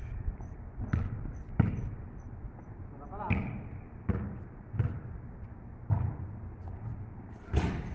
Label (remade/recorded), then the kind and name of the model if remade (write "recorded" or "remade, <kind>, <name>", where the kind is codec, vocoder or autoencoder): recorded